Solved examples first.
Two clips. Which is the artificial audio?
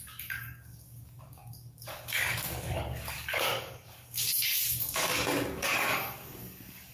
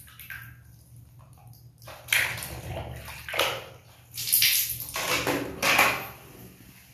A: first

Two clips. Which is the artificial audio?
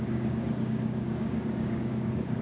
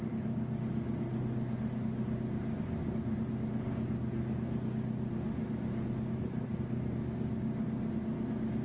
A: first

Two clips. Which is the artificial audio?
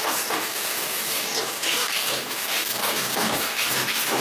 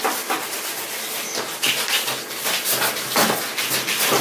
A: first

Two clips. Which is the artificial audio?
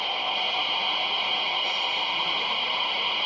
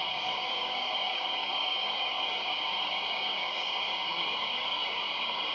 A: second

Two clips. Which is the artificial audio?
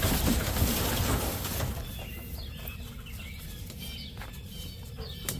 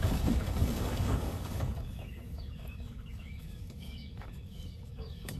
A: second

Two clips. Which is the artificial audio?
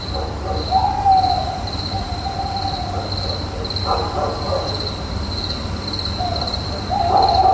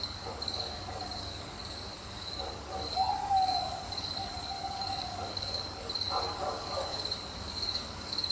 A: second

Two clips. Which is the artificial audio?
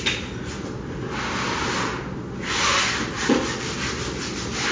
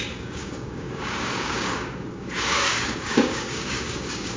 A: second